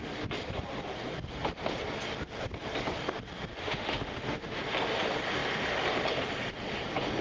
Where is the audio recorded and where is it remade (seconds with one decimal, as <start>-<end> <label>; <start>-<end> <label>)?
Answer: 0.0-3.5 recorded; 3.5-4.6 remade; 4.6-7.2 recorded